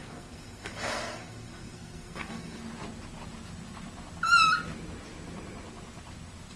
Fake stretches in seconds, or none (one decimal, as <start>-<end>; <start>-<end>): 0.0-2.6